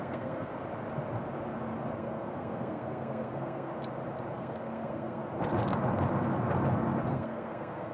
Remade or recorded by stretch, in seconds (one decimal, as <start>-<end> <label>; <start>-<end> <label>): 0.0-0.5 remade; 0.5-2.0 recorded; 2.0-3.7 remade; 3.7-4.3 recorded; 4.3-5.2 remade; 5.2-7.1 recorded; 7.1-7.9 remade